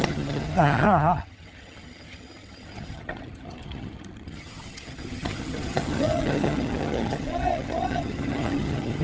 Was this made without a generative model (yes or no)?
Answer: no